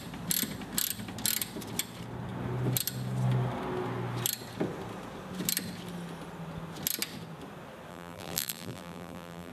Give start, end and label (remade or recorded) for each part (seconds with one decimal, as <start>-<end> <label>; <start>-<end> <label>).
0.0-7.9 recorded; 7.9-9.5 remade